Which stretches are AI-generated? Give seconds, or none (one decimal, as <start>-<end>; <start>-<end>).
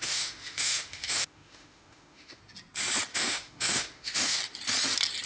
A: 0.0-2.4; 3.1-4.4